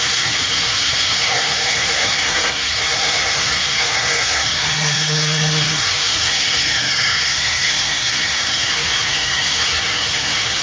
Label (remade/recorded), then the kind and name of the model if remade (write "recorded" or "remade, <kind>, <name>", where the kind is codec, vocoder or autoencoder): remade, codec, SNAC